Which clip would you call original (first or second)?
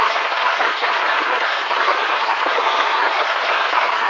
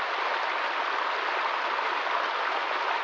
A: second